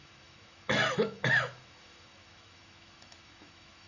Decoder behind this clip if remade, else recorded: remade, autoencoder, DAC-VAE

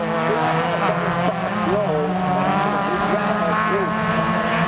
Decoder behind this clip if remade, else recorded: recorded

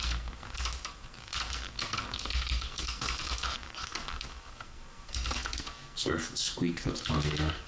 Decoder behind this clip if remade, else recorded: remade, codec, SNAC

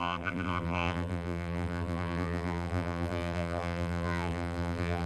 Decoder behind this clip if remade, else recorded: remade, vocoder, BigVGAN v2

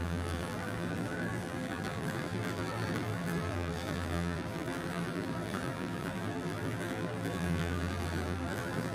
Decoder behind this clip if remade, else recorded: remade, vocoder, BigVGAN v2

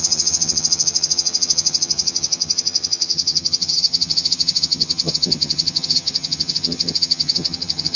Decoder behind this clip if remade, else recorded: remade, vocoder, HiFi-GAN